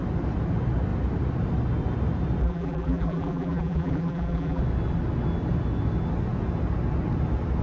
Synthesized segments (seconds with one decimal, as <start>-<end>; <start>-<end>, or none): 2.4-4.6